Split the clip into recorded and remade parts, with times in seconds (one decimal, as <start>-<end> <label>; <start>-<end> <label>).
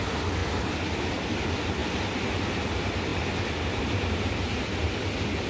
0.0-0.4 recorded; 0.4-1.1 remade; 1.1-1.8 recorded; 1.8-2.5 remade; 2.5-5.5 recorded